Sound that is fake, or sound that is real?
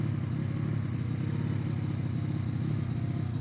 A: real